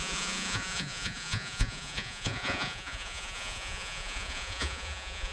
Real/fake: fake